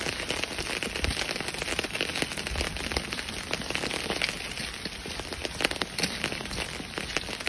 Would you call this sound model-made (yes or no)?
no